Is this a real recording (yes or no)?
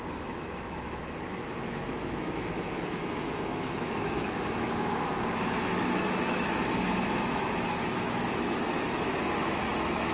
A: no